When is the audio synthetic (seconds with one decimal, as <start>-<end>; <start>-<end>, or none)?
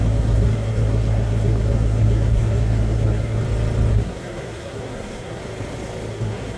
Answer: 0.0-3.4; 3.9-5.4; 6.1-6.6